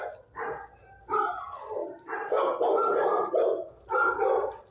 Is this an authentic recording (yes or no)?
yes